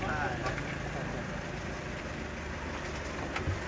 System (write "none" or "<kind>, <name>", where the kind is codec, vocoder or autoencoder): none